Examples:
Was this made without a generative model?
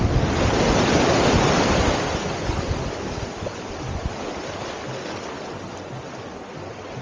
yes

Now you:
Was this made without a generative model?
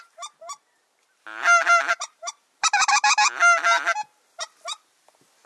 yes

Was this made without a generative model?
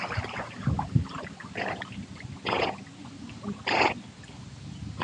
yes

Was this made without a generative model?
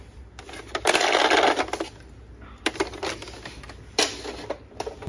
yes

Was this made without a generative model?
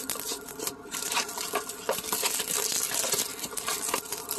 yes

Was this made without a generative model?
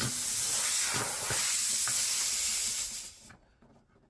yes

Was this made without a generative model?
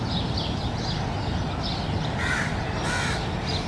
yes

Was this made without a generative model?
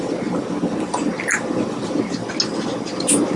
yes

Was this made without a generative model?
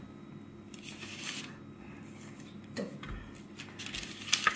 yes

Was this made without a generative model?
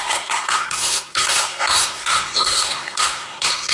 no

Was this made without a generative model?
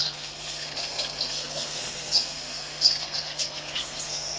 no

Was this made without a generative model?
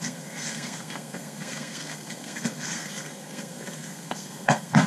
no